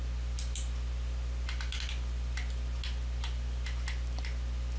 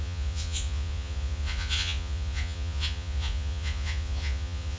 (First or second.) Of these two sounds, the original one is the first